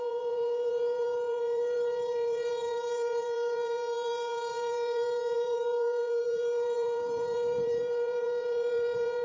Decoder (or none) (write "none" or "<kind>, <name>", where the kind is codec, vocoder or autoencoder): vocoder, Vocos